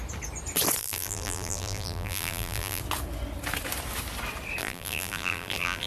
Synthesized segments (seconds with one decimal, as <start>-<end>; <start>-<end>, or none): 0.8-2.8; 4.6-5.9